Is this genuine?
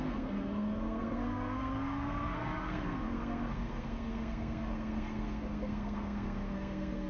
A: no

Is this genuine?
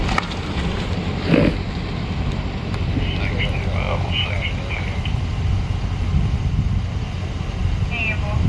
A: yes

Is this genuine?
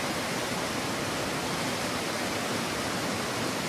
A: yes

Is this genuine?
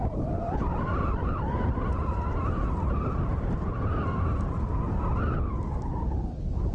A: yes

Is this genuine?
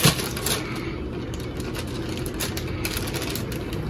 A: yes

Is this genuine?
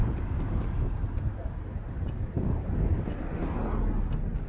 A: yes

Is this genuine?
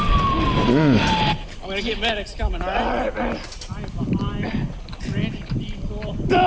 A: yes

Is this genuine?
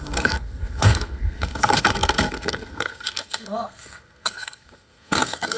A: no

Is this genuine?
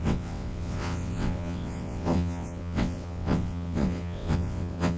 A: no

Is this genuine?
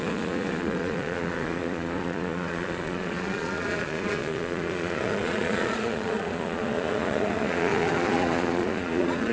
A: no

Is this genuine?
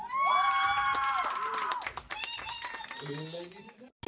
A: yes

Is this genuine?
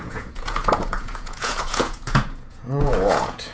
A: no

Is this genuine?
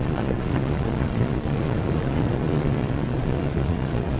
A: no